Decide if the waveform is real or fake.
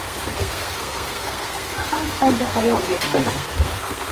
fake